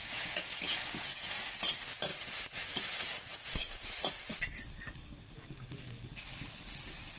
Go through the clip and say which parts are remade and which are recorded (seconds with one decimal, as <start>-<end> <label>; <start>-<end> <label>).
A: 0.0-1.5 remade; 1.5-2.1 recorded; 2.1-4.0 remade; 4.0-7.2 recorded